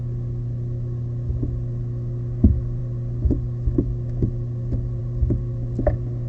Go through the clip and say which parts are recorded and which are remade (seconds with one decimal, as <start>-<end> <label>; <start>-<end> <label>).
0.0-6.3 recorded